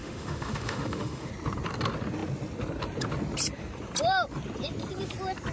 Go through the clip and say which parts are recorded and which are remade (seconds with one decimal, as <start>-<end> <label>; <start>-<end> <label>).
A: 0.0-1.3 remade; 1.3-5.5 recorded

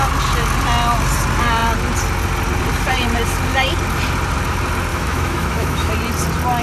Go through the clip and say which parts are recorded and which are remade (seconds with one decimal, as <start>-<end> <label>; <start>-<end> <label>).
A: 0.0-4.9 recorded; 4.9-5.9 remade; 5.9-6.6 recorded

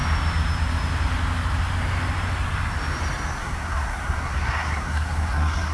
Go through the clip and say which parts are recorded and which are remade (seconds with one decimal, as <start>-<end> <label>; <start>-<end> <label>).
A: 0.0-3.4 recorded; 3.4-5.7 remade

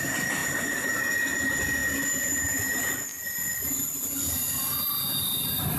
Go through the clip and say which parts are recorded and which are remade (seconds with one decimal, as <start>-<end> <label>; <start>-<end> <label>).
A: 0.0-5.8 recorded